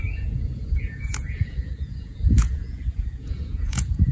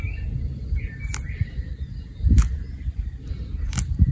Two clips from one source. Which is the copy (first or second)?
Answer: first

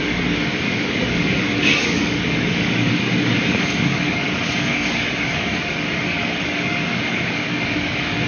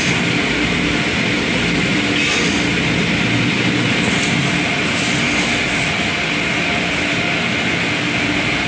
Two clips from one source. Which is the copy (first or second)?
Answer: first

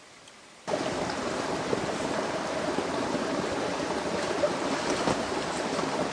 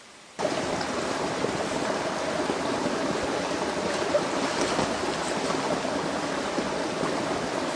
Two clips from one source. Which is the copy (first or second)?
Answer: first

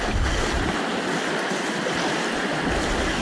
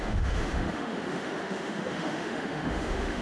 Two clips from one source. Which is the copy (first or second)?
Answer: second